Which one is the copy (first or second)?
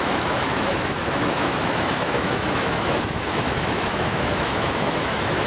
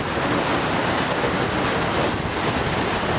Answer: first